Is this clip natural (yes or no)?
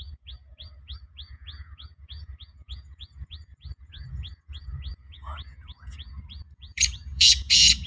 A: no